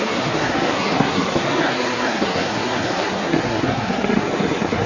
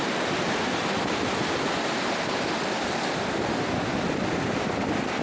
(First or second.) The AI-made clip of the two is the first